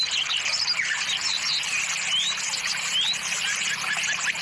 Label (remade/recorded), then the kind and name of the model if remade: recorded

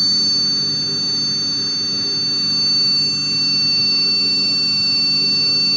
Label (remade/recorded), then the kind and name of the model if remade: recorded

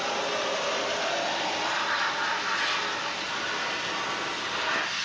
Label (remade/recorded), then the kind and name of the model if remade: recorded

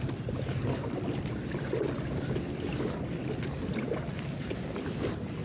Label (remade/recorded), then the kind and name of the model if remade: recorded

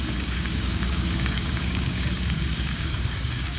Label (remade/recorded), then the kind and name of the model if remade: remade, codec, DAC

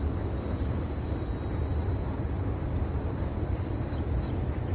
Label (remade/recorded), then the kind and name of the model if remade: recorded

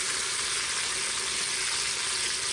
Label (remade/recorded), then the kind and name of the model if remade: recorded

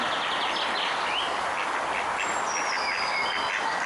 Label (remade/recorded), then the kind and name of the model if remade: recorded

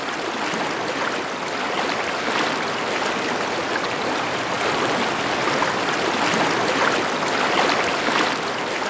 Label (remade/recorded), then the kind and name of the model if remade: recorded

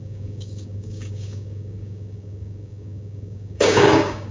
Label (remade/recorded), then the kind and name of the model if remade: remade, codec, DAC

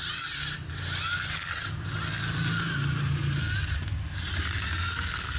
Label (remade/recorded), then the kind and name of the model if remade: recorded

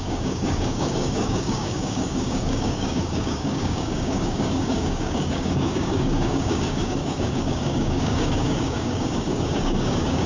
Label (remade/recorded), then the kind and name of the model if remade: remade, codec, DAC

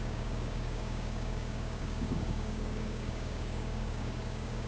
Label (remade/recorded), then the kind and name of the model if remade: remade, codec, DAC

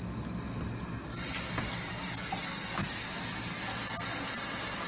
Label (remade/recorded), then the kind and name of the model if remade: recorded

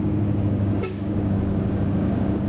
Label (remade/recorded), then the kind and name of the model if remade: remade, codec, DAC